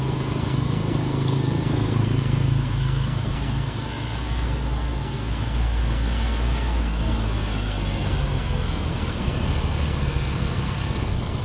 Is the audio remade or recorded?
remade